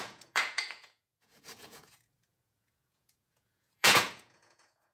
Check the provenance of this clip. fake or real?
fake